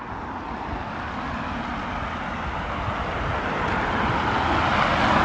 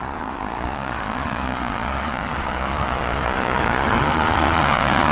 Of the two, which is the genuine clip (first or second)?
first